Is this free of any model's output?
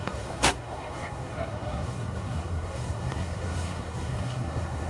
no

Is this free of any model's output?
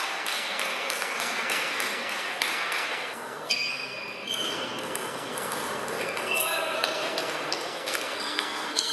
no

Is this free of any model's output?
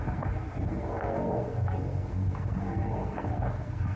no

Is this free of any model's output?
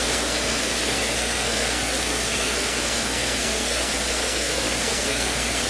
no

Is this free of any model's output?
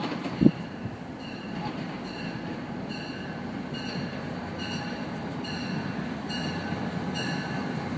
yes